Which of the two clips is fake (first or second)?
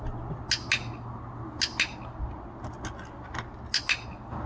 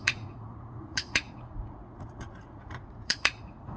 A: second